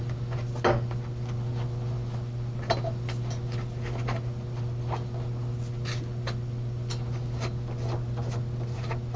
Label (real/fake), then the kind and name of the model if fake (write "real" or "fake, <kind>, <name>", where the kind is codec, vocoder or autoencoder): real